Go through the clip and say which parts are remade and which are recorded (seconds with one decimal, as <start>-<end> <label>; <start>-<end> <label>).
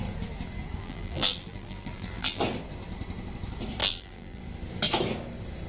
0.0-0.8 recorded; 0.8-2.4 remade; 2.4-3.8 recorded; 3.8-4.4 remade; 4.4-5.7 recorded